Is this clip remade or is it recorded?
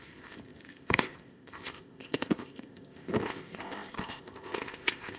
remade